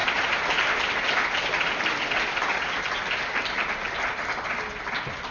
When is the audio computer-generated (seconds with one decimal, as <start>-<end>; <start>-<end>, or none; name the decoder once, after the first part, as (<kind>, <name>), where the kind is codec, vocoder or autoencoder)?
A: 0.0-2.8 (vocoder, BigVGAN v2)